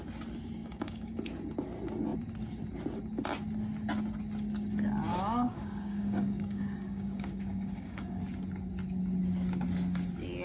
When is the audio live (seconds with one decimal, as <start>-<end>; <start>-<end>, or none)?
0.0-0.6; 1.2-5.1; 8.2-10.4